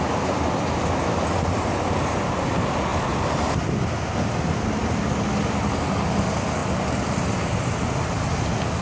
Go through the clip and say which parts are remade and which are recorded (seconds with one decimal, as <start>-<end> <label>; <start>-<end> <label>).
0.0-8.8 recorded